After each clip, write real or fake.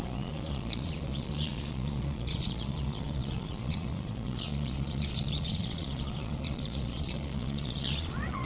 fake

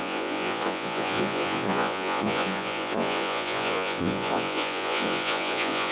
fake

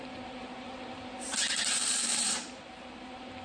fake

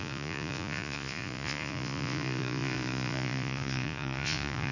fake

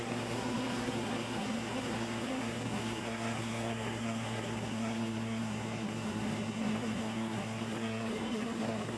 fake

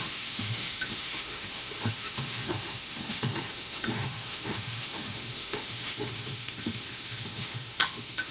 fake